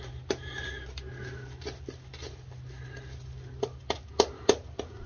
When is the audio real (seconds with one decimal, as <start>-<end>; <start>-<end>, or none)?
0.0-5.1